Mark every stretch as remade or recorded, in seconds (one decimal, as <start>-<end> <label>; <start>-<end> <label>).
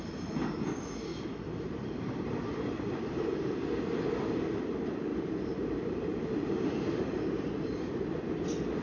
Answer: 0.0-1.1 recorded; 1.1-3.4 remade; 3.4-5.1 recorded; 5.1-7.2 remade; 7.2-8.8 recorded